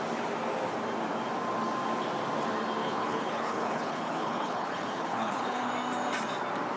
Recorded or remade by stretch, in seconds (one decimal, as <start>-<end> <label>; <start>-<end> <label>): 0.0-2.8 recorded; 2.8-5.7 remade; 5.7-6.8 recorded